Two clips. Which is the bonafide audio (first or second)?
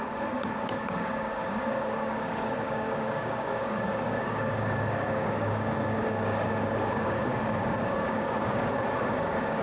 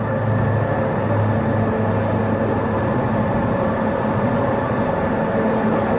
second